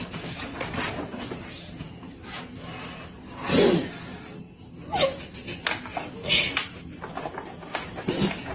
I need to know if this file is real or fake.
real